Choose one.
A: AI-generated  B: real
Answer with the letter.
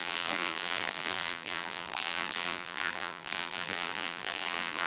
A